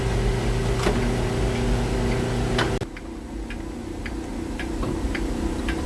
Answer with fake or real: real